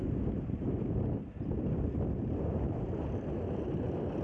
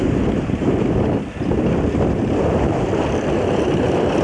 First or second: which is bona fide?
first